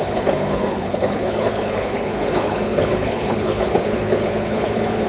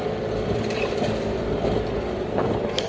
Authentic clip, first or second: second